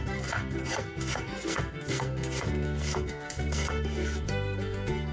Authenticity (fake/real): fake